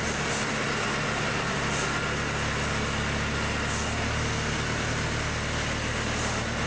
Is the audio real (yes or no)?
yes